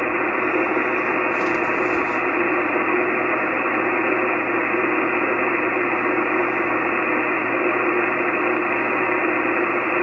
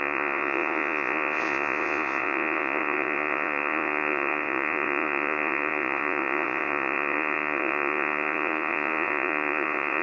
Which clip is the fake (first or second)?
second